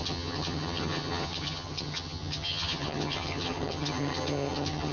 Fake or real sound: fake